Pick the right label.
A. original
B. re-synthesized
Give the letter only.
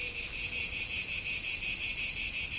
A